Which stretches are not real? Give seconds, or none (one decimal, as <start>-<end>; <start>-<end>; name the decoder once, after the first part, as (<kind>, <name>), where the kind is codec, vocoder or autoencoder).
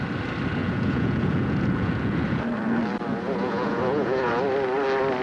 0.6-2.4 (vocoder, Vocos); 3.1-4.3